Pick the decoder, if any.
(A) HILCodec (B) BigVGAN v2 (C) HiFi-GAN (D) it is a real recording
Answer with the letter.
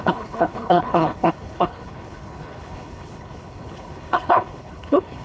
A